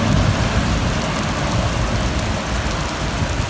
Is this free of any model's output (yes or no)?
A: yes